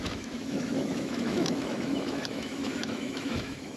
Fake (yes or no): yes